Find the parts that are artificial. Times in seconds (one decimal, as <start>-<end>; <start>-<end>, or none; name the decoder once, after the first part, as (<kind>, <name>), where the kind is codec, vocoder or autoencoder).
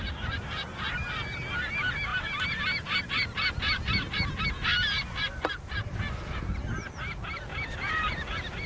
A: 7.5-8.1 (vocoder, BigVGAN v2)